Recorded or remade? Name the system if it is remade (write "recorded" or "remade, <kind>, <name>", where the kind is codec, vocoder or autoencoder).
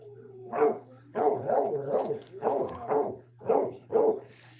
remade, codec, HILCodec